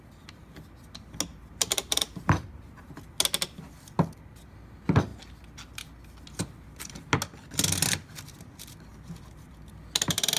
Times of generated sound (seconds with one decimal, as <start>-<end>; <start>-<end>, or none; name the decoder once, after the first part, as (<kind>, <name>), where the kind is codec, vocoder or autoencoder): 1.3-2.9 (vocoder, BigVGAN v2); 8.9-9.5